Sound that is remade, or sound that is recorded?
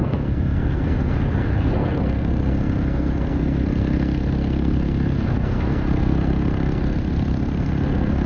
remade